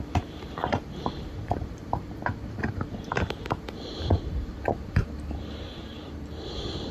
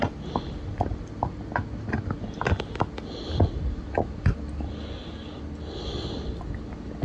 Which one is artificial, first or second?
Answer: first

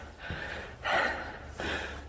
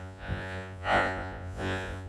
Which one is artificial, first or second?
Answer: second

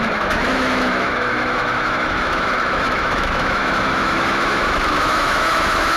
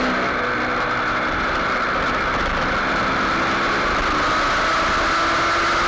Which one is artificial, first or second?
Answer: first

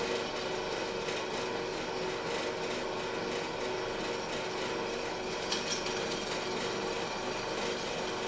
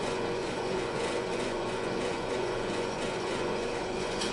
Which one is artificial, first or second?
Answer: second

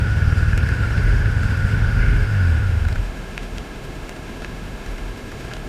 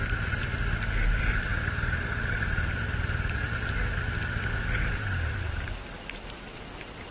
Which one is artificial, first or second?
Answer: first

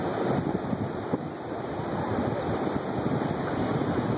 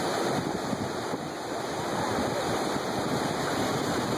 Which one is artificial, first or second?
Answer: first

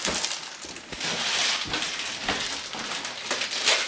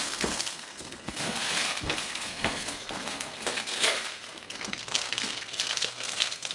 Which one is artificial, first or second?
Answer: second